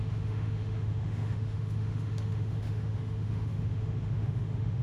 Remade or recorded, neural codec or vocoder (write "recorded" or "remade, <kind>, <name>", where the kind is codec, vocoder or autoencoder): remade, autoencoder, DAC-VAE